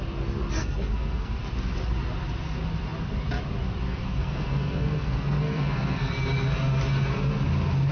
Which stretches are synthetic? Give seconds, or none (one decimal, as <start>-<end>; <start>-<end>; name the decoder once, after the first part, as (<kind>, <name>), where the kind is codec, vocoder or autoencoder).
0.6-1.4 (codec, SNAC); 3.9-6.1

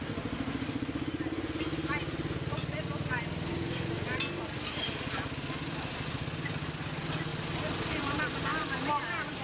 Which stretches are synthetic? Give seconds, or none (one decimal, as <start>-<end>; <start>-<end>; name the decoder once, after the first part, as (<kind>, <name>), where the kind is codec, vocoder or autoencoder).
none